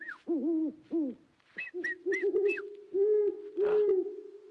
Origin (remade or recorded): recorded